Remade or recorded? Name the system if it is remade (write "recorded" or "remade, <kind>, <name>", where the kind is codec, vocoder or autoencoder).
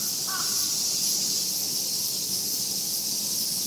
recorded